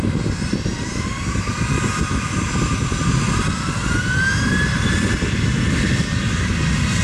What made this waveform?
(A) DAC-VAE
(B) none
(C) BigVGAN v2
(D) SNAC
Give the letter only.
B